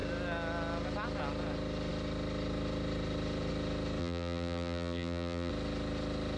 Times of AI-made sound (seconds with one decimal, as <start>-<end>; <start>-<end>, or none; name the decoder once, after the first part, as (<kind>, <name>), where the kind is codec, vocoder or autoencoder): 4.0-5.5 (vocoder, BigVGAN v2)